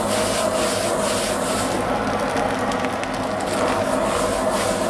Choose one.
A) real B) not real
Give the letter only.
A